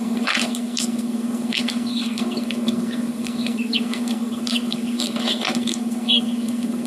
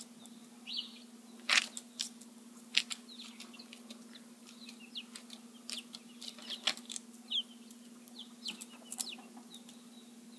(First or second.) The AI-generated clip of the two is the first